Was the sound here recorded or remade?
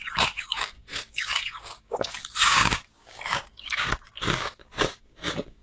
remade